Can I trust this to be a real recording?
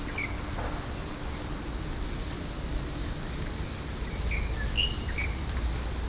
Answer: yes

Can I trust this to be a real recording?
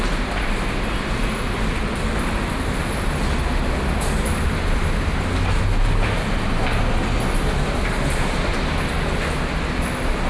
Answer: yes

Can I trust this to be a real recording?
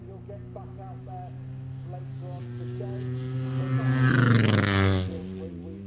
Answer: yes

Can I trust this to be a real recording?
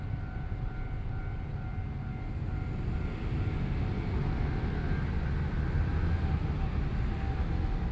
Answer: yes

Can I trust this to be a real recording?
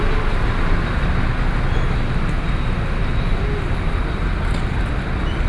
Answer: yes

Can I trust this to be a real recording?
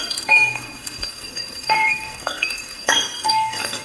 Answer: no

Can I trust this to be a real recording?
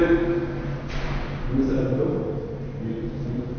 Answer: yes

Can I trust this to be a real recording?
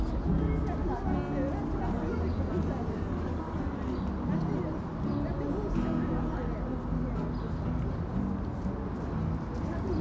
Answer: yes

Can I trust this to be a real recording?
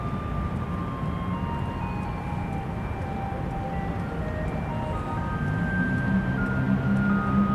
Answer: yes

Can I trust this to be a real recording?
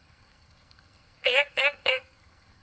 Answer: no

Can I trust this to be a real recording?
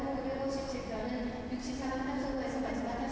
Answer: yes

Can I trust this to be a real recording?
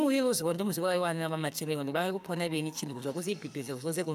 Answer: no